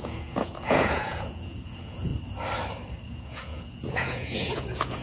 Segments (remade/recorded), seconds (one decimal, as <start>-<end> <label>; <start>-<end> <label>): 0.0-2.1 remade; 2.1-3.1 recorded; 3.1-5.0 remade